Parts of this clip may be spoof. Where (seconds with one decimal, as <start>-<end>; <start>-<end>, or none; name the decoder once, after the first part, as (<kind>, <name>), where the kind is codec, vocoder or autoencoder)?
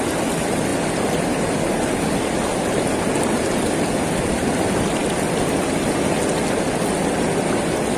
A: none